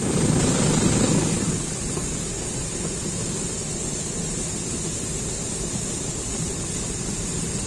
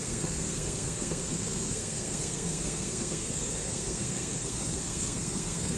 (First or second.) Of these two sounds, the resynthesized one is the second